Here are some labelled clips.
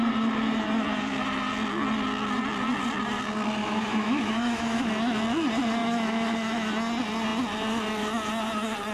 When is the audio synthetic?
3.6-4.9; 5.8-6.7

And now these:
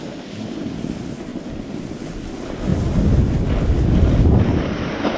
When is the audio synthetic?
none

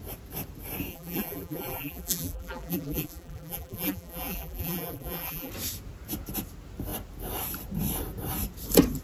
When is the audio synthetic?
0.9-5.5

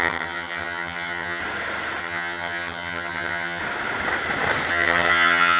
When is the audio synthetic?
0.0-1.4; 2.0-3.6; 4.7-5.6